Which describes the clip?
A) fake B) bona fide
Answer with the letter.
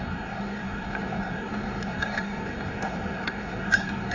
A